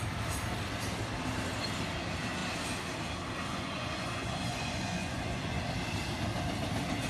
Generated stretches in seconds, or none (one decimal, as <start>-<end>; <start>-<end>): 3.5-5.6